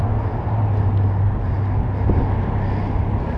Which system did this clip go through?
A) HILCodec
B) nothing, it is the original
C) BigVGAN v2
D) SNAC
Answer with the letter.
B